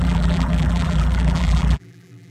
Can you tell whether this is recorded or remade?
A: remade